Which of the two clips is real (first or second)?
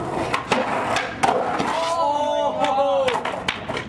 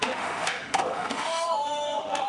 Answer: first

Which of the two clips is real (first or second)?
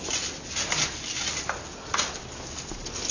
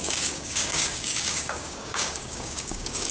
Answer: first